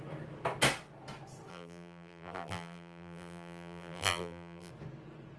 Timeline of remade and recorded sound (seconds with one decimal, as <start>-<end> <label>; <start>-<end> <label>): 0.0-1.5 recorded; 1.5-4.7 remade; 4.7-5.4 recorded